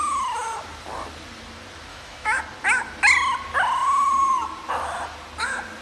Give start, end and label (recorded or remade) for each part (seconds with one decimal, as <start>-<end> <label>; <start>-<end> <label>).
0.0-1.9 recorded; 1.9-2.4 remade; 2.4-5.8 recorded